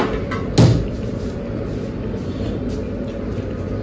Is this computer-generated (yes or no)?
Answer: no